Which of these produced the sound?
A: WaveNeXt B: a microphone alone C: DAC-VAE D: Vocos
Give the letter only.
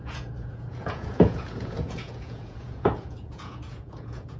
D